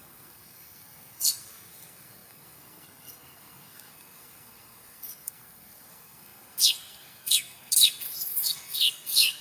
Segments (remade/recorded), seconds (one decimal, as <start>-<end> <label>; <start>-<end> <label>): 0.0-9.4 remade